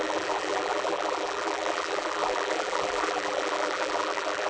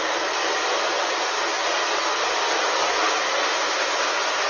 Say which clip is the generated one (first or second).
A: first